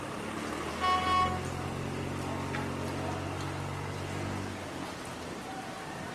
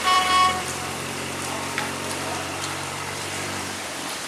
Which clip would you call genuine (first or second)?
first